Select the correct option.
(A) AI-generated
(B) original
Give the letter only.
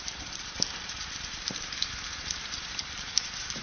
A